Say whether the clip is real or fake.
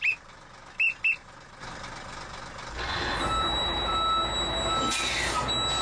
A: real